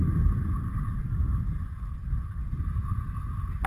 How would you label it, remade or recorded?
recorded